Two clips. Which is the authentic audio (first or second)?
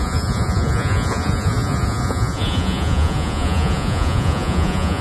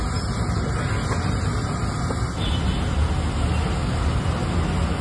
second